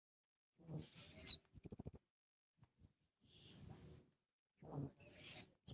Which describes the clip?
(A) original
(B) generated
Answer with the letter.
A